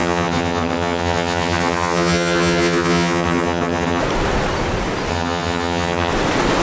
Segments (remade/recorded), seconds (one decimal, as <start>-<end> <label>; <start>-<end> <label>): 0.0-4.0 remade; 4.0-5.1 recorded; 5.1-6.1 remade; 6.1-6.6 recorded